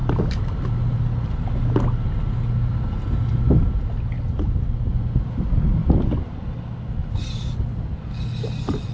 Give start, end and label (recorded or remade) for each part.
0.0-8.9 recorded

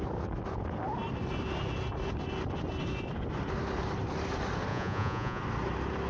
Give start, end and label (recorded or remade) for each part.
0.0-4.7 recorded; 4.7-5.4 remade; 5.4-6.1 recorded

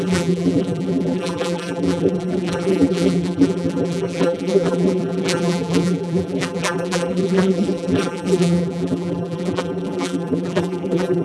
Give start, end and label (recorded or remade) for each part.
0.0-11.2 remade

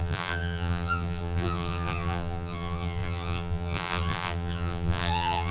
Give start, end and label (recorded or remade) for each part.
0.0-5.5 remade

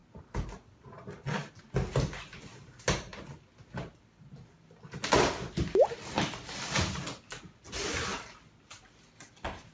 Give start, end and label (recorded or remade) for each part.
0.0-9.7 recorded

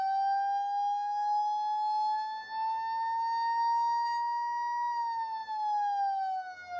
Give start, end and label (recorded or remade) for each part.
0.0-6.8 recorded

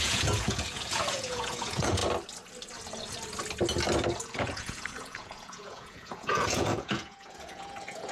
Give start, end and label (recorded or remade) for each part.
0.0-2.0 remade; 2.0-4.2 recorded; 4.2-8.1 remade